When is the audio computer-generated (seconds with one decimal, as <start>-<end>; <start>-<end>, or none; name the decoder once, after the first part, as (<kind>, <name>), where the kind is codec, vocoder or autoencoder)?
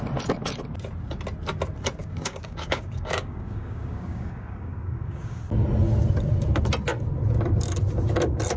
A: 2.0-5.4 (codec, DAC)